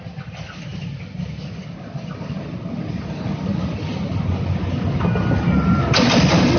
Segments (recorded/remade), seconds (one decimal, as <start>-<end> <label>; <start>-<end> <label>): 0.0-6.6 recorded